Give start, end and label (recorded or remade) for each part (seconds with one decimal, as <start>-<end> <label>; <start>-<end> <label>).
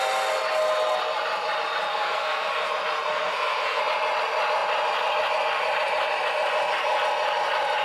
0.0-1.9 recorded; 1.9-2.7 remade; 2.7-3.1 recorded; 3.1-3.8 remade; 3.8-7.8 recorded